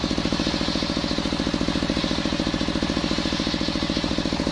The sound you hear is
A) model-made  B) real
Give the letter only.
B